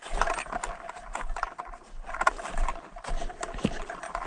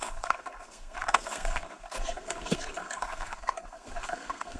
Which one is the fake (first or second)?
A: second